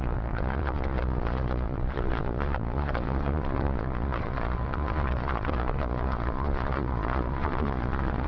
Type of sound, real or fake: fake